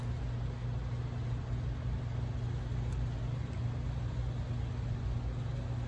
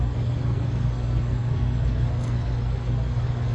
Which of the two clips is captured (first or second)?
first